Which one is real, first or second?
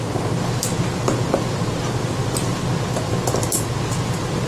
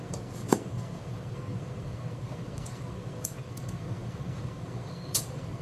first